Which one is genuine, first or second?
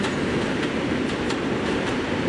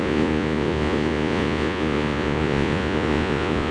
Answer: first